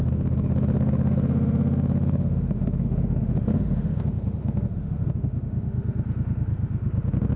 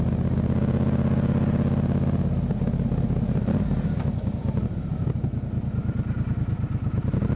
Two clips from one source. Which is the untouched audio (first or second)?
second